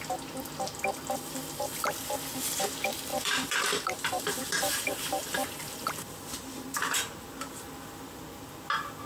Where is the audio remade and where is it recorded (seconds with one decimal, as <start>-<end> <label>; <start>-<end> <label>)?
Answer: 0.0-3.1 recorded; 3.1-7.7 remade; 7.7-9.1 recorded